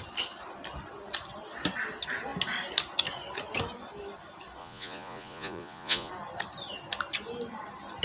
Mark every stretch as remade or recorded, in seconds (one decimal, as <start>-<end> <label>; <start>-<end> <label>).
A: 0.0-4.6 recorded; 4.6-6.1 remade; 6.1-8.0 recorded